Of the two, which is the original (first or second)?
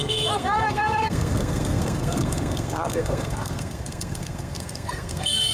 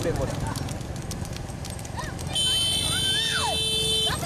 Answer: second